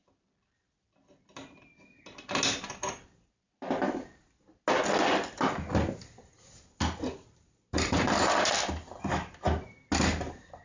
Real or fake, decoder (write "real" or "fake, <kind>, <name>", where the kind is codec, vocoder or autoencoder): real